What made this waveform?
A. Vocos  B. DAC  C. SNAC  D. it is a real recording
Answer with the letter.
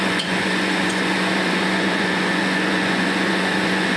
A